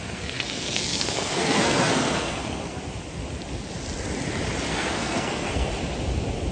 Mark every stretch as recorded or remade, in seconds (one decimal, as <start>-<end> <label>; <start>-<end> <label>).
0.0-2.8 remade; 2.8-4.7 recorded; 4.7-5.7 remade; 5.7-6.5 recorded

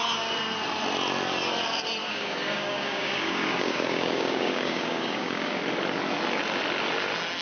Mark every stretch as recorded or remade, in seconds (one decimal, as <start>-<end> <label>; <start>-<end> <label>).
0.0-2.0 recorded; 2.0-5.6 remade; 5.6-7.4 recorded

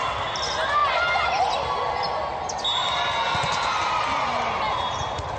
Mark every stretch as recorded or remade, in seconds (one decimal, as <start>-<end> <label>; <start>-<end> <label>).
0.0-5.4 recorded

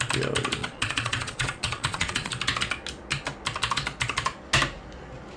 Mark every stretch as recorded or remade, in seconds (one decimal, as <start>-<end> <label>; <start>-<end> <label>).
0.0-0.6 recorded; 0.6-2.3 remade; 2.3-5.4 recorded

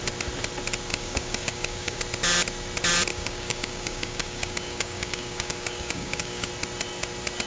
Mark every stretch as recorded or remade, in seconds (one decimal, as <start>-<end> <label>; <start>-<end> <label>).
0.0-0.9 recorded; 0.9-2.0 remade; 2.0-3.1 recorded; 3.1-6.5 remade; 6.5-7.5 recorded